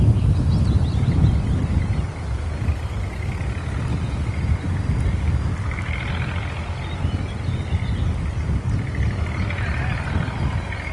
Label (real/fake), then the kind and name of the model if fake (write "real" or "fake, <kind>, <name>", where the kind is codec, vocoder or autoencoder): real